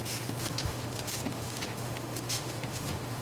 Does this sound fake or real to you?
fake